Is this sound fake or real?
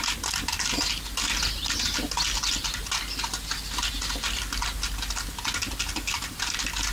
real